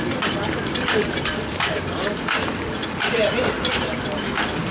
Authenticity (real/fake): fake